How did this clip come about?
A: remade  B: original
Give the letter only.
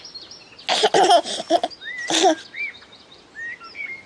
B